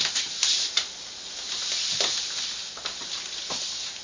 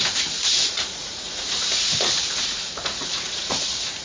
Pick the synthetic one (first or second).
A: second